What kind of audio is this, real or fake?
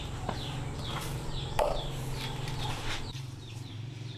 fake